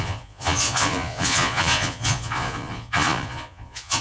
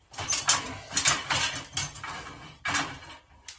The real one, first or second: second